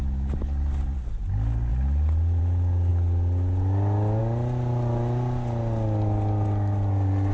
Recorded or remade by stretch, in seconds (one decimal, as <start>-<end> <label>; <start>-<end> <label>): 0.0-7.3 recorded